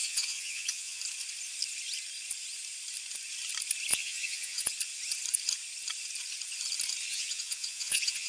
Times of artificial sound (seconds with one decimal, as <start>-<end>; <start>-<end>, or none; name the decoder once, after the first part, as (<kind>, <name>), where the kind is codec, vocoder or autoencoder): 0.0-1.0 (vocoder, Vocos); 3.9-4.7; 7.1-8.3